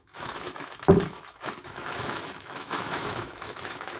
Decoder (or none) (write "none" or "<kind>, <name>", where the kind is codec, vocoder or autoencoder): autoencoder, DAC-VAE